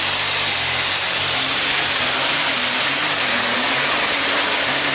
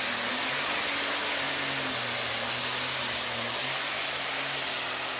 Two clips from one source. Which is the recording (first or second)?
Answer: second